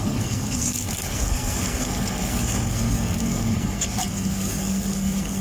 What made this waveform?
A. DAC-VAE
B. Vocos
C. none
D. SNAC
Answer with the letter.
D